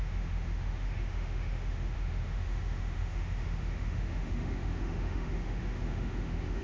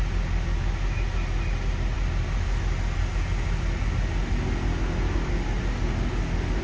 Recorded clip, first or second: second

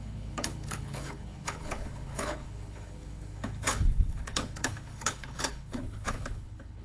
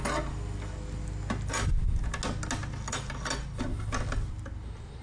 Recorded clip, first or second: second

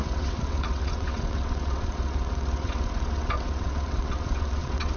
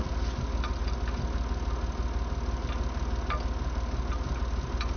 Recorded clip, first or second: second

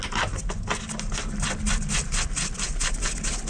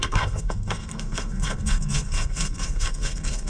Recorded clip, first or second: first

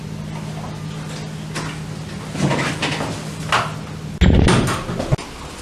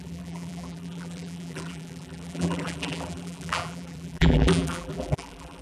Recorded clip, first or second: first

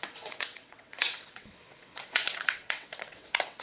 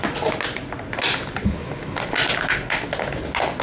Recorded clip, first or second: second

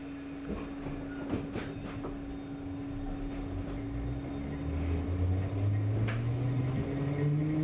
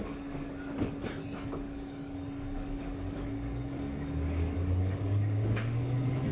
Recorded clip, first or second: first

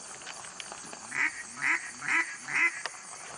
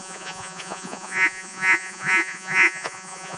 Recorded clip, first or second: first